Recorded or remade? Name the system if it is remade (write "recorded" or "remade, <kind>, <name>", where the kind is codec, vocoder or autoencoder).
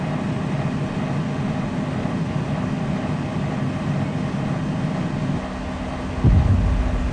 recorded